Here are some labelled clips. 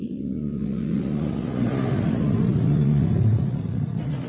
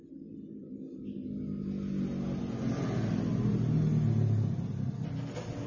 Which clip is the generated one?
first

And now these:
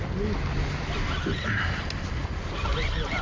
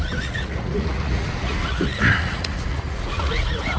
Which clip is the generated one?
second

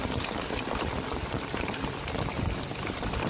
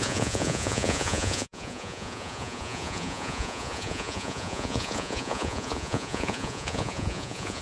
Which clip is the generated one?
second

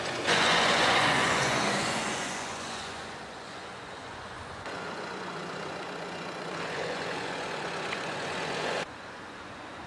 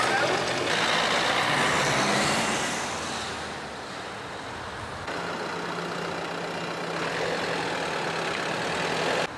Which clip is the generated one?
first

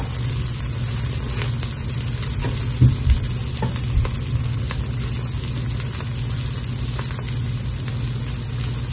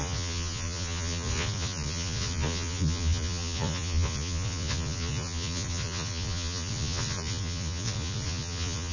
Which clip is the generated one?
second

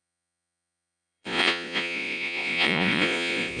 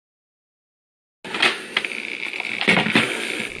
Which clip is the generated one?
first